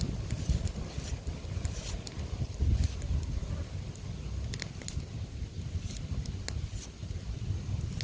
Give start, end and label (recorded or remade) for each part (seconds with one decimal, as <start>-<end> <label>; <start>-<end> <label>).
0.0-8.0 recorded